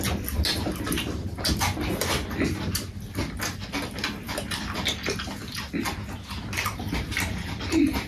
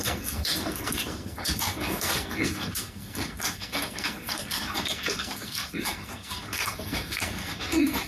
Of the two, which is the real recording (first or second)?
first